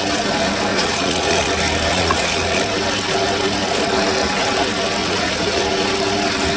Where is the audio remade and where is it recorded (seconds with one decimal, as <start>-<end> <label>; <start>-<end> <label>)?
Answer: 0.0-0.7 recorded; 0.7-1.5 remade; 1.5-1.9 recorded; 1.9-2.6 remade; 2.6-5.0 recorded; 5.0-5.6 remade; 5.6-6.6 recorded